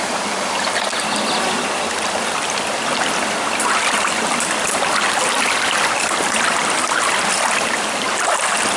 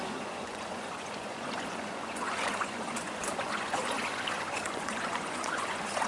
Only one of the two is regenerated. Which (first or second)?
second